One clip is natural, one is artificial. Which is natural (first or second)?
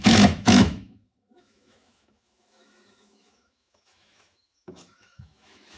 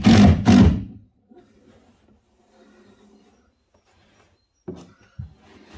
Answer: second